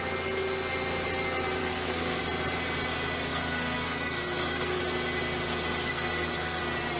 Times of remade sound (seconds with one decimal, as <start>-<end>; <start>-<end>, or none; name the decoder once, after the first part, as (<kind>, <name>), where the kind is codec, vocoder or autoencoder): 1.6-2.2 (codec, SNAC); 3.3-4.8; 5.9-6.6

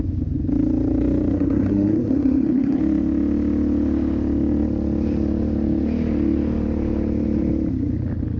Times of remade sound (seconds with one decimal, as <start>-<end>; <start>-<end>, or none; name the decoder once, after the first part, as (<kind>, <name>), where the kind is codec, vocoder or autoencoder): 1.3-2.8 (codec, SNAC)

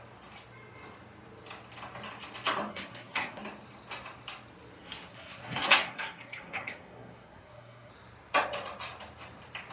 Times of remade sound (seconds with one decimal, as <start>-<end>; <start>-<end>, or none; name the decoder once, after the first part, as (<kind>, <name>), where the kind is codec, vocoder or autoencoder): 2.7-3.4 (codec, SNAC); 4.8-7.9

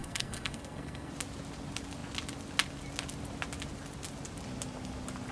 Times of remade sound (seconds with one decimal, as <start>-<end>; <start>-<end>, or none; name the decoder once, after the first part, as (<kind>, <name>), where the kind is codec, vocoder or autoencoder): 0.0-1.1 (codec, SNAC)

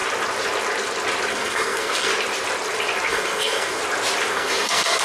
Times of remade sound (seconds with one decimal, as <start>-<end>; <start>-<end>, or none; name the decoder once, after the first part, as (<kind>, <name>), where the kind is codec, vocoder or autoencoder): 1.3-2.1 (codec, SNAC); 3.1-3.8; 4.3-5.0